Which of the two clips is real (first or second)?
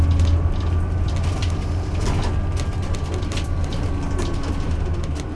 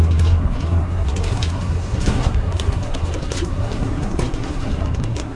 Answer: first